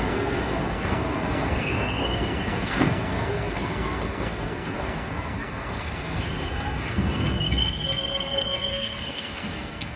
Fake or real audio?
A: fake